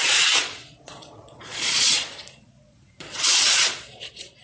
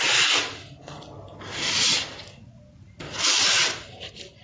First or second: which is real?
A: second